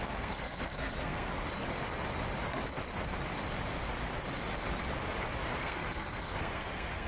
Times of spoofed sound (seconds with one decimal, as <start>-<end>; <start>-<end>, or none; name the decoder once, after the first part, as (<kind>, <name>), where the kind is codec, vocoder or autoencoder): 0.0-1.3 (codec, SNAC); 5.6-7.1